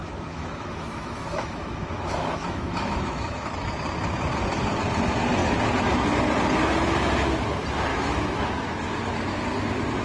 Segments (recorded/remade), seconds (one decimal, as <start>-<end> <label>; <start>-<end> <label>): 0.0-3.7 remade; 3.7-7.9 recorded; 7.9-8.9 remade; 8.9-10.0 recorded